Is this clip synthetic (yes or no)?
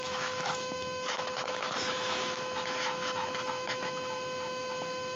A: yes